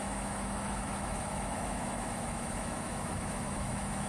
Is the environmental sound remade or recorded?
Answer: remade